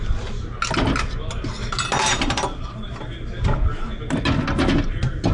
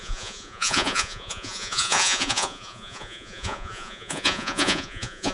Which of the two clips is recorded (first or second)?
first